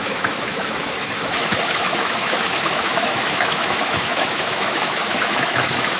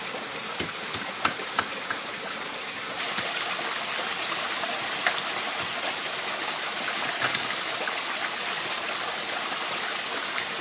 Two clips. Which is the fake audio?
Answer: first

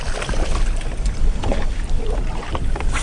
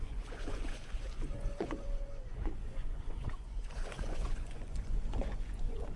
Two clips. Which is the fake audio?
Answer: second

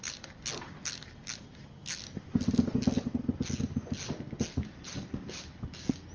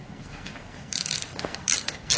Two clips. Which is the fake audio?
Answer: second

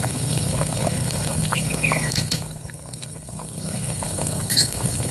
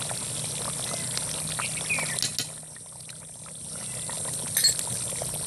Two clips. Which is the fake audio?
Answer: first